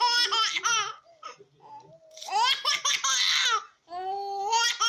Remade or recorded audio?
recorded